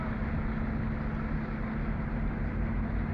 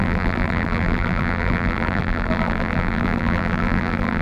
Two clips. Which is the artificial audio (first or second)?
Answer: second